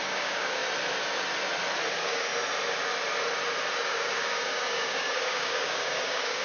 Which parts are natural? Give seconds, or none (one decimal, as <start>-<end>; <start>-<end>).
0.6-1.9; 2.3-3.7